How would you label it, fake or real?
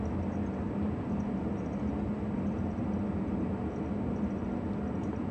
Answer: real